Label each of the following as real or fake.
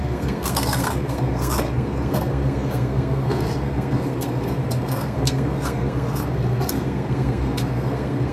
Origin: fake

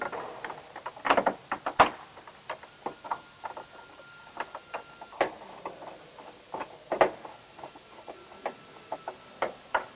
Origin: real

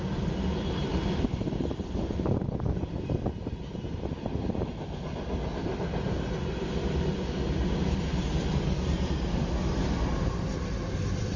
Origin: real